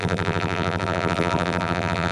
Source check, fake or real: fake